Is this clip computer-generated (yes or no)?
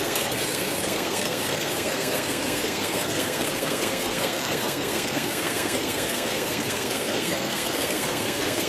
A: yes